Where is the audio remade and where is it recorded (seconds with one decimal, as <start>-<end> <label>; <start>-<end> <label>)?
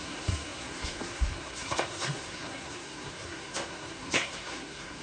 0.0-5.0 remade